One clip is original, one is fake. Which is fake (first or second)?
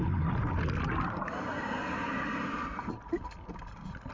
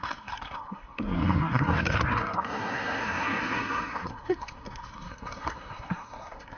second